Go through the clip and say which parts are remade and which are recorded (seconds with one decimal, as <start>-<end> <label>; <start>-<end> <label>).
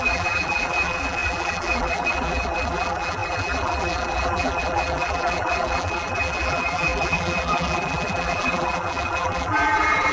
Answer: 0.0-10.1 remade